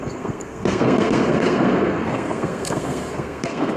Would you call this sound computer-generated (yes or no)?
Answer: yes